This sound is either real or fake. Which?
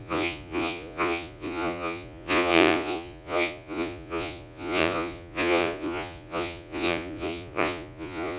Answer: fake